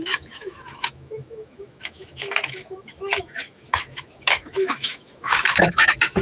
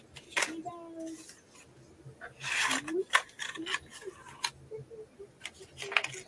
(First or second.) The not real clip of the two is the first